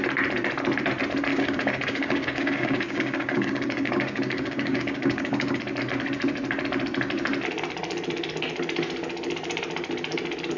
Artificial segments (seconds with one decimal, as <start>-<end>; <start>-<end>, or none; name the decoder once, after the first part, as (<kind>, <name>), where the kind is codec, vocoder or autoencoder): 1.3-5.6 (codec, DAC)